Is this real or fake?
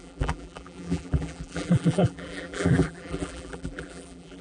fake